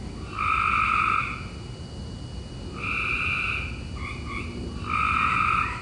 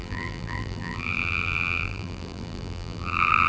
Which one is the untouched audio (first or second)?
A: first